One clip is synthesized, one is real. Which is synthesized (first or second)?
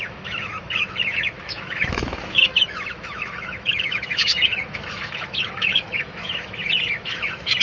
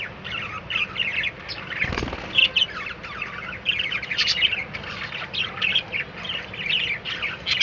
first